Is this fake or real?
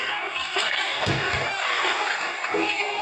fake